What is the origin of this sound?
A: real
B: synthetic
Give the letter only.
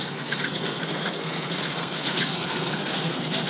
B